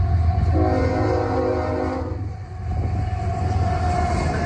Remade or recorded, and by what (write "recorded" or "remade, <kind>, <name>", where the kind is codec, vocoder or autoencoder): recorded